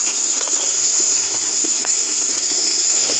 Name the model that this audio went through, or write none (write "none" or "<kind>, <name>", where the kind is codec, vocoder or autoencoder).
codec, SNAC